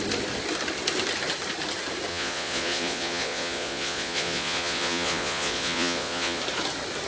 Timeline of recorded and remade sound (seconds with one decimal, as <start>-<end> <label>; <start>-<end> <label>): 0.0-2.1 recorded; 2.1-6.4 remade; 6.4-7.1 recorded